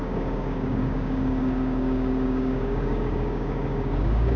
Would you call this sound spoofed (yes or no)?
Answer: yes